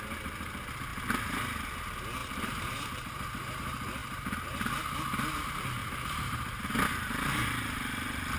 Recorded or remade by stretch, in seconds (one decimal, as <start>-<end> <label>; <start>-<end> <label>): 0.0-2.2 recorded; 2.2-3.6 remade; 3.6-4.0 recorded; 4.0-4.7 remade; 4.7-5.8 recorded; 5.8-6.6 remade; 6.6-8.4 recorded